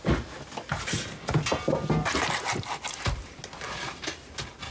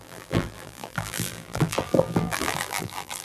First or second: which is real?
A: first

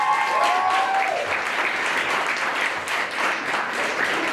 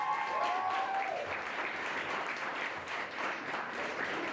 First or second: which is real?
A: first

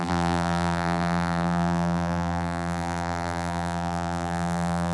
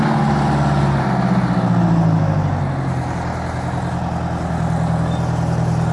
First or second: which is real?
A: second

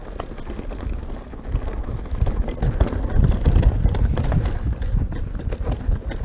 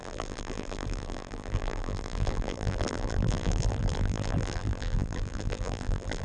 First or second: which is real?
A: first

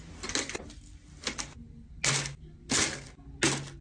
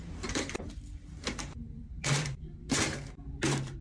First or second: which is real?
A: first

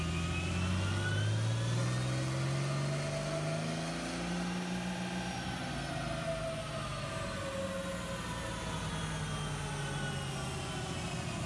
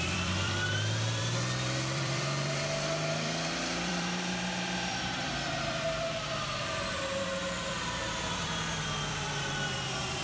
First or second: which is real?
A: first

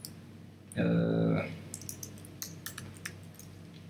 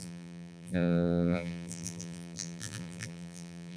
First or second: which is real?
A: first